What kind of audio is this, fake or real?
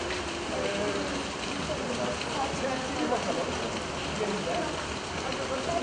real